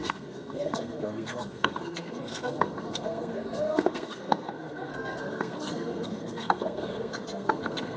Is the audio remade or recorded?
remade